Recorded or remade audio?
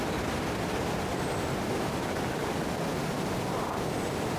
recorded